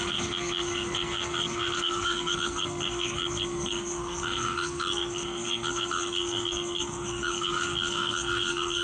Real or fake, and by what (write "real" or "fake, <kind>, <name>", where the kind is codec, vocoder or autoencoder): fake, codec, SNAC